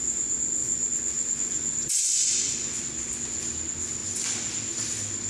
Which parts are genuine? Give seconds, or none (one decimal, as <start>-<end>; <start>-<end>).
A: 0.0-0.6; 2.8-5.3